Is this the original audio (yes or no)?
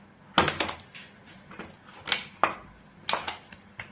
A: yes